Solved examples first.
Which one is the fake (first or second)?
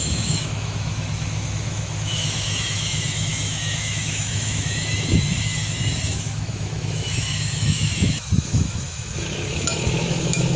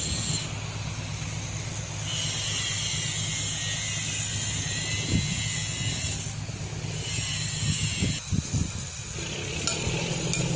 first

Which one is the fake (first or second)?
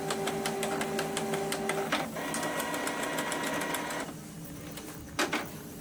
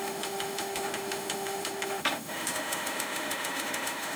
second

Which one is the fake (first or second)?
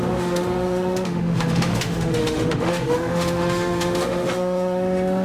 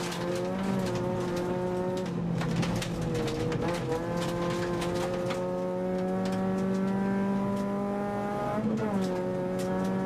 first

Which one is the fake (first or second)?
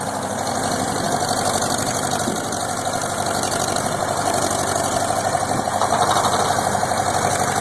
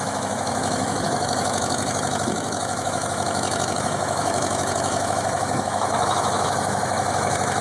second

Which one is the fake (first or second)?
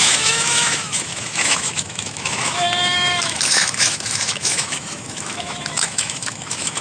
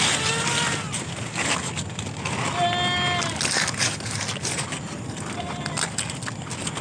first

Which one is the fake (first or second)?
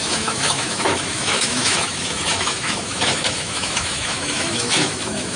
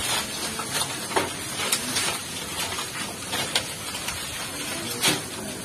first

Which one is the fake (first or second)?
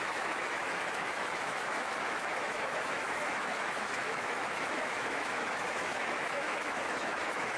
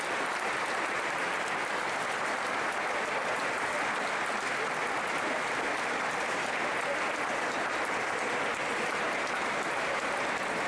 first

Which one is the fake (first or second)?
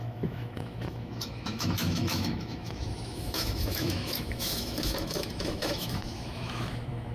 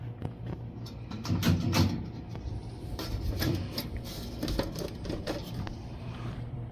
first